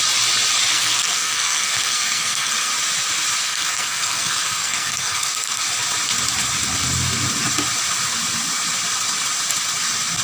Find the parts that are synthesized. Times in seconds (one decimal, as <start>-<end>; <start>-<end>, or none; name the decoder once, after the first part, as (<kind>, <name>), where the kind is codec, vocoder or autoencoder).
0.7-2.7 (codec, SNAC); 3.4-5.6